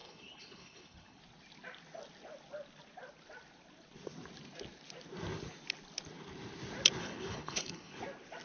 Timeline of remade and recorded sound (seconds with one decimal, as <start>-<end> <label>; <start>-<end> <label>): 0.0-1.2 remade; 1.2-7.0 recorded; 7.0-8.0 remade; 8.0-8.4 recorded